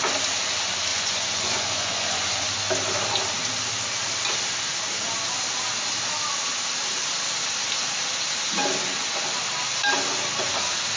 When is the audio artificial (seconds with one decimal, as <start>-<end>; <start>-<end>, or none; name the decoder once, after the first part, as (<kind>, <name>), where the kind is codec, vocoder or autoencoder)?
0.9-2.4 (vocoder, Vocos)